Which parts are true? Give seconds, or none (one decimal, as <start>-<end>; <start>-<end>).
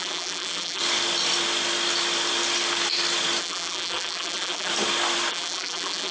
0.8-3.4; 4.7-5.3